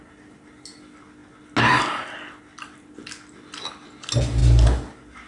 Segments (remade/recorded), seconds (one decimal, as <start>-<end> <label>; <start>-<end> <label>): 0.0-5.3 recorded